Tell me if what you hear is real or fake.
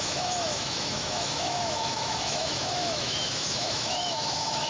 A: fake